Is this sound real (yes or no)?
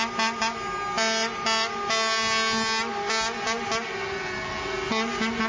yes